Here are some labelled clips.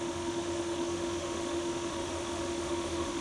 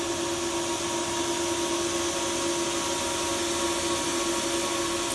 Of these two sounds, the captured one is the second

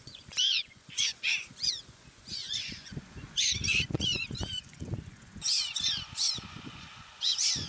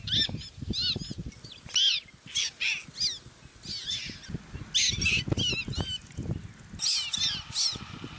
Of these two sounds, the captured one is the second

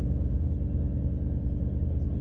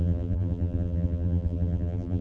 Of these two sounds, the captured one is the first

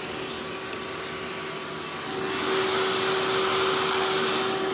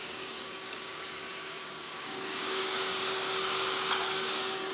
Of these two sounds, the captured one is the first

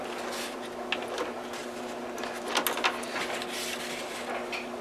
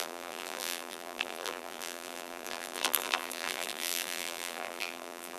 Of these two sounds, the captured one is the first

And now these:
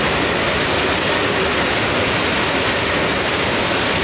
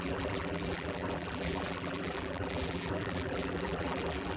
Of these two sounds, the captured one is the first